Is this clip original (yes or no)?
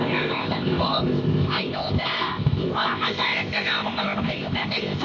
no